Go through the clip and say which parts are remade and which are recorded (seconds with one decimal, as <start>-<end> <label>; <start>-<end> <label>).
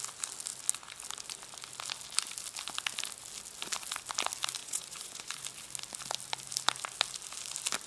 0.0-4.6 recorded; 4.6-5.4 remade; 5.4-7.9 recorded